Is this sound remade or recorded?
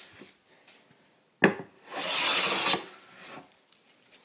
recorded